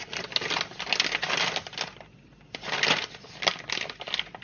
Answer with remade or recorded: recorded